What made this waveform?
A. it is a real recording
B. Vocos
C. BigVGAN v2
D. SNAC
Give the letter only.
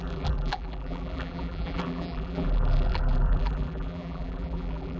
C